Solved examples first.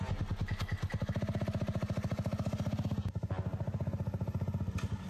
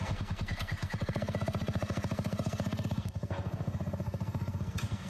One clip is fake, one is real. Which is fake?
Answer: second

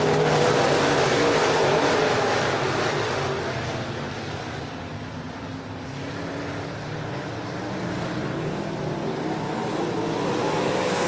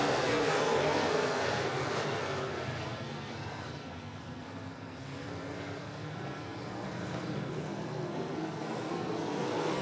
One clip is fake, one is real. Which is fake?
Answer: second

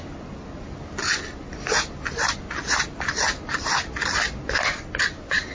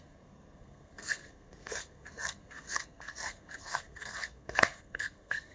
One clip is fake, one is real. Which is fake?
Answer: second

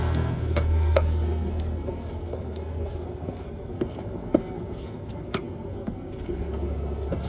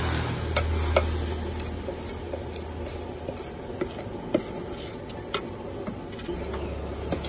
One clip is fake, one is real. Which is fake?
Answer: first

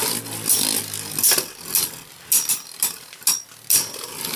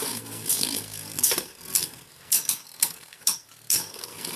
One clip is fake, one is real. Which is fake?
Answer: second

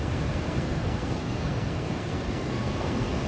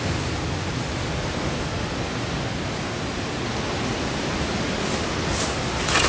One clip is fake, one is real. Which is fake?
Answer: first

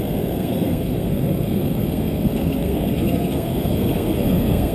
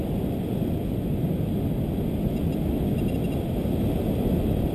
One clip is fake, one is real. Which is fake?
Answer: first